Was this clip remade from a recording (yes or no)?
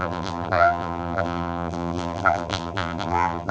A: yes